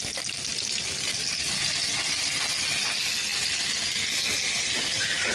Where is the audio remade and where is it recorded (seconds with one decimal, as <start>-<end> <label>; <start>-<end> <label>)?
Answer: 0.0-5.3 recorded